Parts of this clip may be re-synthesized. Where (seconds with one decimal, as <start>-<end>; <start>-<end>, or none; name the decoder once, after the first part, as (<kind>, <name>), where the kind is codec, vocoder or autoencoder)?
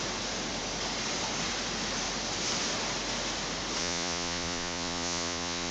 3.8-5.7 (vocoder, Vocos)